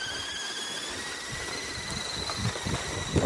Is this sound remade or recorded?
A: recorded